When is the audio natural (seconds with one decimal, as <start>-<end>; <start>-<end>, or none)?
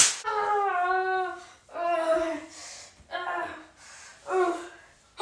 0.0-5.2